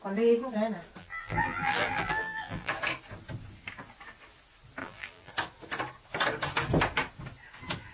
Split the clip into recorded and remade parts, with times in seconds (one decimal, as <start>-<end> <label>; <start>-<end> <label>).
0.0-1.0 recorded; 1.0-2.7 remade; 2.7-4.8 recorded; 4.8-5.3 remade; 5.3-7.9 recorded